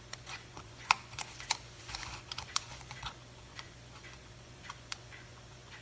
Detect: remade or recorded remade